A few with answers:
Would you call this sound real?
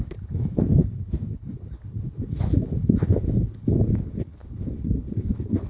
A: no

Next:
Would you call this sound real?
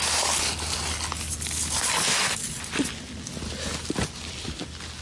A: yes